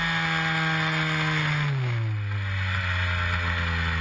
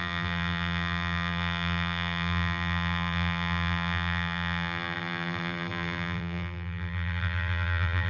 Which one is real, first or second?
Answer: first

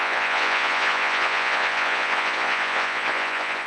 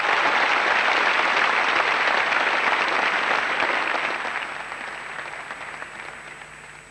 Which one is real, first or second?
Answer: second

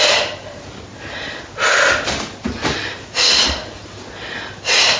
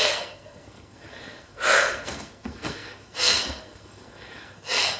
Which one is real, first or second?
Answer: first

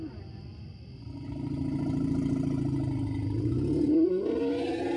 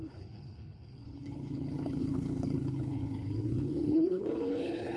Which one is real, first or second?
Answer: first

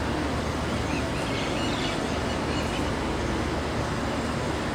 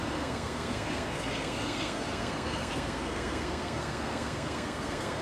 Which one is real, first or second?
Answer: first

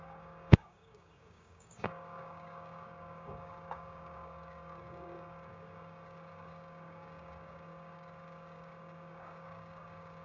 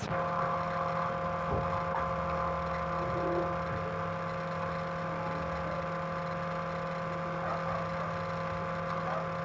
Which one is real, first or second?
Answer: second